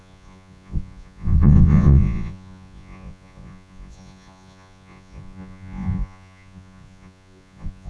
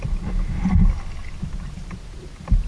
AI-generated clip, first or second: first